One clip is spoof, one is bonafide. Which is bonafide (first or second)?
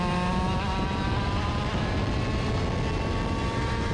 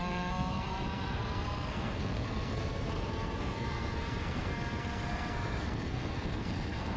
first